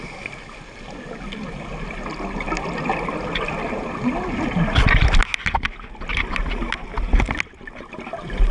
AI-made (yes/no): no